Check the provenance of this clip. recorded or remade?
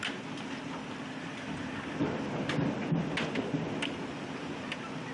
recorded